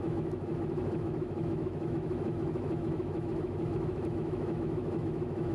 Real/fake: fake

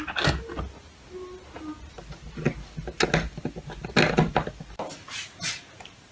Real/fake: real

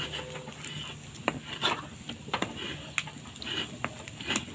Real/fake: real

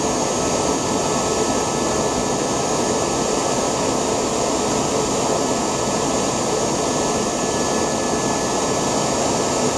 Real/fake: real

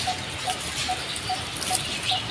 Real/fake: real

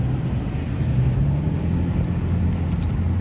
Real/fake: real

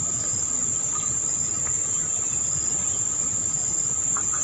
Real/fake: real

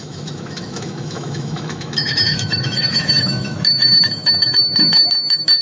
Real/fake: fake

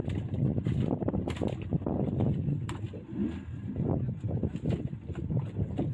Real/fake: real